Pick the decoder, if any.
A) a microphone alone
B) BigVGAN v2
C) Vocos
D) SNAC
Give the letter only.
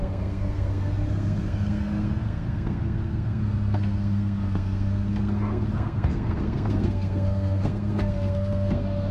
D